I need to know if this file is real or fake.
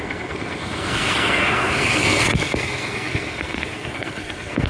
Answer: fake